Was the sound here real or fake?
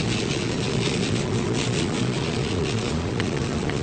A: fake